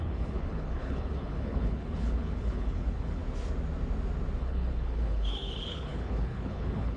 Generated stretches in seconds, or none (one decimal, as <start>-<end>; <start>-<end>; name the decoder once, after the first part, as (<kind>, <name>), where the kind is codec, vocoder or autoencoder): 0.0-3.2 (codec, HILCodec); 4.4-7.0